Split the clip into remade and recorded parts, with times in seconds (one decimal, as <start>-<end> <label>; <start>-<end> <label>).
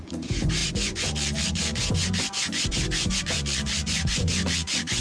0.0-5.0 remade